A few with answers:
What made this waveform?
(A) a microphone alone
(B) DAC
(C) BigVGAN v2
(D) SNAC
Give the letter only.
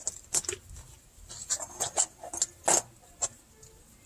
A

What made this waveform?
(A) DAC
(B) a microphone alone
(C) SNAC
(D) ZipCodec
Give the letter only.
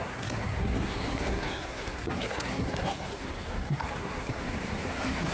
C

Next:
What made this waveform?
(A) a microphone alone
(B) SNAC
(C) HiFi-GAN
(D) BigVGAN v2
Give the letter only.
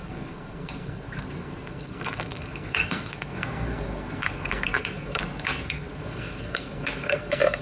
B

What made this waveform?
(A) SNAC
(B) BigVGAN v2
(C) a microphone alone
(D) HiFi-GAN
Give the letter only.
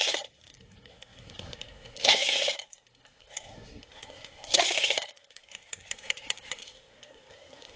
A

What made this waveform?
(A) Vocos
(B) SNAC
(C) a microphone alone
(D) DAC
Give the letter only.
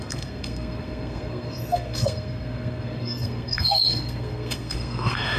B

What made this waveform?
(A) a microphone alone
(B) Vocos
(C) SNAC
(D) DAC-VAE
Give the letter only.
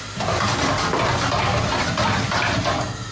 A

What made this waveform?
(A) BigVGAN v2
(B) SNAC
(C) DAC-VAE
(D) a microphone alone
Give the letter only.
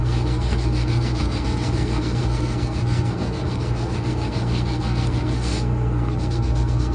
B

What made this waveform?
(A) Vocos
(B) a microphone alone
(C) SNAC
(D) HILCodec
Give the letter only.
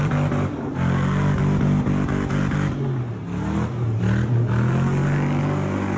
B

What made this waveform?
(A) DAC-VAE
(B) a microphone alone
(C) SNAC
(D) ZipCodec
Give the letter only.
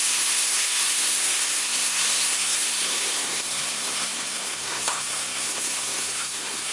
C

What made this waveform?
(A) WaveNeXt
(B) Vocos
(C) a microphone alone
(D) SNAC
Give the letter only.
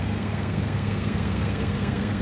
D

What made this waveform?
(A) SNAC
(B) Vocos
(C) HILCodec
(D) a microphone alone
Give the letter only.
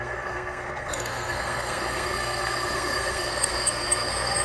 A